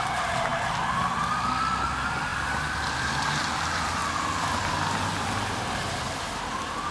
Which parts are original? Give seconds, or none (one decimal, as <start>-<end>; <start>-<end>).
0.0-6.9